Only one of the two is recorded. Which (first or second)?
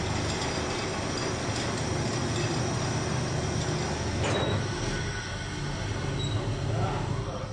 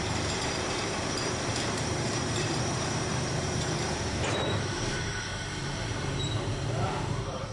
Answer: first